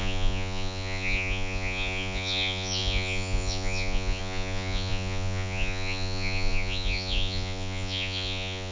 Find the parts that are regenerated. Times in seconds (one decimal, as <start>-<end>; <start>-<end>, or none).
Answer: 0.0-8.7